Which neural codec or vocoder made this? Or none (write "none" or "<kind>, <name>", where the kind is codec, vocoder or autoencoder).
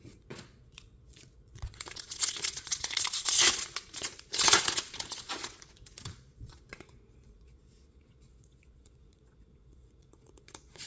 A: vocoder, Vocos